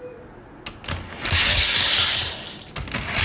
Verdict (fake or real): real